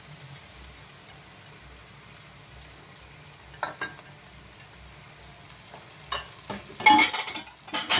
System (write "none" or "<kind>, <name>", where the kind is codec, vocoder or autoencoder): none